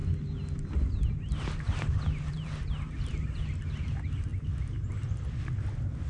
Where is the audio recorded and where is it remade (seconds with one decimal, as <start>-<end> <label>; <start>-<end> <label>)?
0.0-6.1 recorded